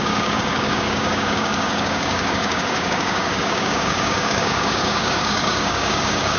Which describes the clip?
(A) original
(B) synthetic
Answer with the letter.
B